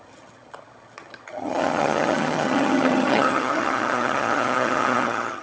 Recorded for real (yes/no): no